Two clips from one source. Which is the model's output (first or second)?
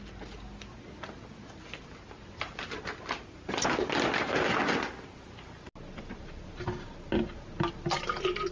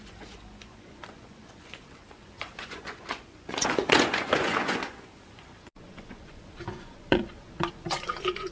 second